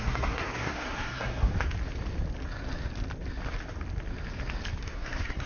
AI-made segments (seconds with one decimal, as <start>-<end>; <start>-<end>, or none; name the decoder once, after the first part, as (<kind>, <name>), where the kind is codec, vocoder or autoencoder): 0.0-1.5 (codec, SNAC); 4.8-5.5